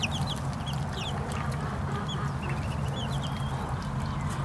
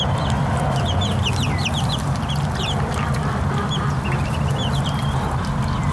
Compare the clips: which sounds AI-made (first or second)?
second